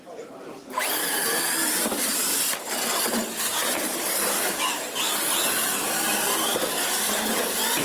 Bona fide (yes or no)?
yes